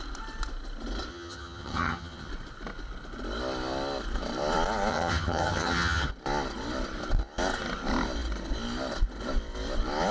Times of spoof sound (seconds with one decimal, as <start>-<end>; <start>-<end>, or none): 1.1-2.3; 4.9-6.1